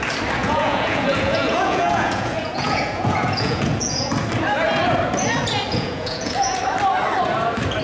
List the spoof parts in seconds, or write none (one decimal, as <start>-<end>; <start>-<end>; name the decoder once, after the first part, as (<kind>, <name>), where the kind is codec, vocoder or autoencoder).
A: 0.4-4.1 (vocoder, Vocos); 5.7-6.6